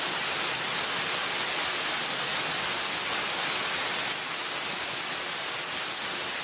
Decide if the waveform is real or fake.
real